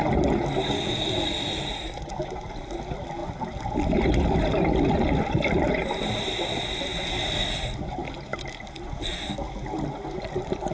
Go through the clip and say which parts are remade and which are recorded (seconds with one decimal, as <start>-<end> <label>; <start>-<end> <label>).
0.0-10.7 recorded